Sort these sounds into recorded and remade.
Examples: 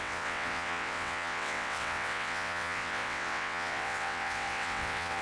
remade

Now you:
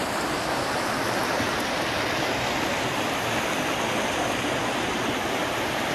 recorded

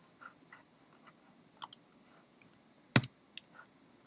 recorded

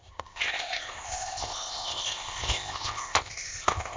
remade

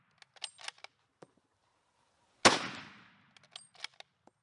recorded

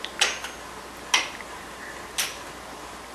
recorded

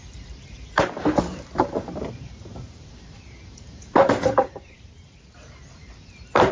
remade